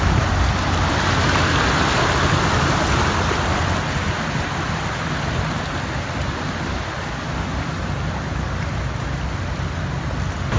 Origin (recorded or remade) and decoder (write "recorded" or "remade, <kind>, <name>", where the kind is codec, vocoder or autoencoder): recorded